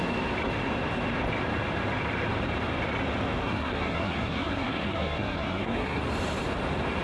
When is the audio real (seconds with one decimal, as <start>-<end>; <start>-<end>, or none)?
0.0-3.4; 6.0-7.0